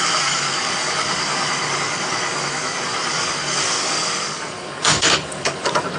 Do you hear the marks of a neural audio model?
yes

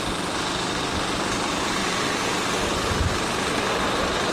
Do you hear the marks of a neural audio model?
no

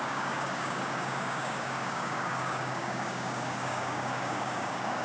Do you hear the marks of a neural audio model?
yes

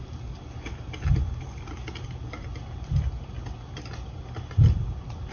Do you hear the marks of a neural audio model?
no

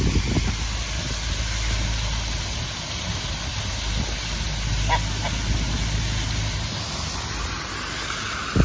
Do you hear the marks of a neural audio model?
no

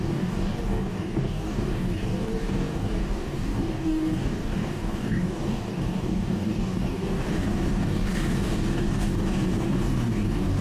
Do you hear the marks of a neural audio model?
yes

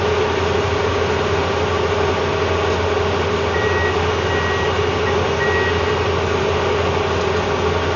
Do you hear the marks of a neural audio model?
no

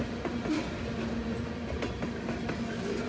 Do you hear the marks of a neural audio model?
no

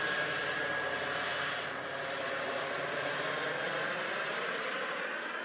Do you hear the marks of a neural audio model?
no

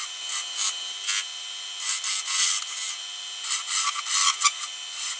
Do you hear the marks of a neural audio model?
no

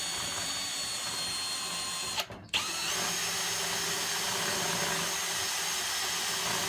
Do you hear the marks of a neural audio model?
no